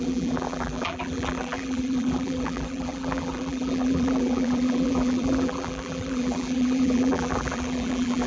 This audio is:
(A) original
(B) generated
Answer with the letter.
B